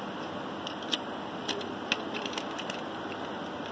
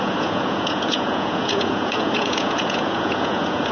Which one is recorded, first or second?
first